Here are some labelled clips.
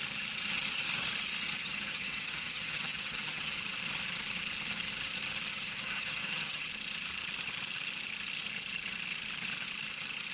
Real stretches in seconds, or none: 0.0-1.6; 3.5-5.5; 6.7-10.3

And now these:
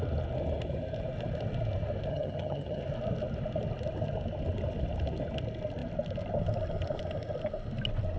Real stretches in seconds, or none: 0.0-2.1; 2.8-8.2

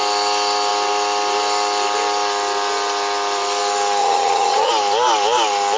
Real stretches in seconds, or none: 0.0-4.0; 4.7-5.8

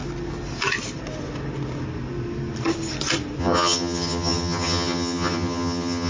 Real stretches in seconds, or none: 0.0-3.4